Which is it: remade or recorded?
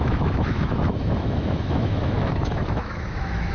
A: remade